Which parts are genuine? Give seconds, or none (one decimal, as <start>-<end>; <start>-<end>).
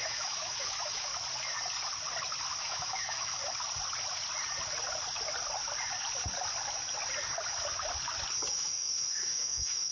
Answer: 1.1-2.6; 3.4-8.5